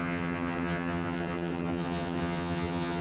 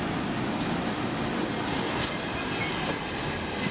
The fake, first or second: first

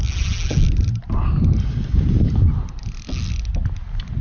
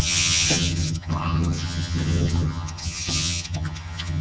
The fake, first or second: second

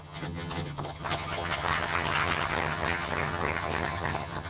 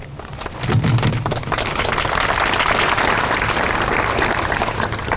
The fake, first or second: first